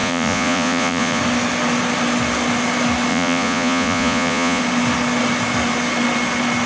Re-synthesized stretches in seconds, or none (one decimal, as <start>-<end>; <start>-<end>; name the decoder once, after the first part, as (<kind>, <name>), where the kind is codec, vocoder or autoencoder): 0.0-1.2 (vocoder, Vocos); 3.1-4.6